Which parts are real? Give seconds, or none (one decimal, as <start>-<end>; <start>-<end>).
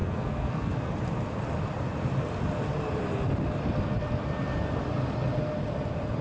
0.9-6.2